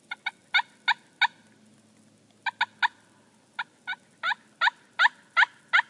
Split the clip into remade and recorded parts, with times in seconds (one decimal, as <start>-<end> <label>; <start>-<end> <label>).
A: 0.0-5.9 recorded